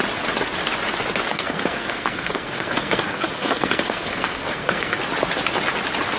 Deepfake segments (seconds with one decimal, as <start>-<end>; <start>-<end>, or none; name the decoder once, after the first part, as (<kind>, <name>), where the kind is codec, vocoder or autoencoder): 1.3-5.0 (codec, SNAC)